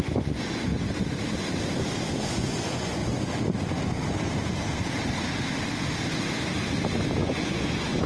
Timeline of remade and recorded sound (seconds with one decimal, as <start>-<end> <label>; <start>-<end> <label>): 0.0-0.7 remade; 0.7-2.2 recorded; 2.2-3.0 remade; 3.0-7.2 recorded; 7.2-8.1 remade